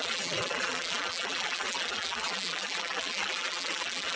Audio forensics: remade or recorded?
remade